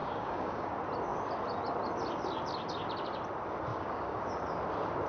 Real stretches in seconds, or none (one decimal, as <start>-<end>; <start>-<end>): 0.7-3.7; 4.2-5.1